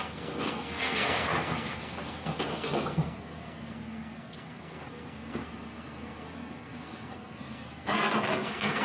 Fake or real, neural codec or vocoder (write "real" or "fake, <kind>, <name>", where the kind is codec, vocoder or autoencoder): fake, codec, SNAC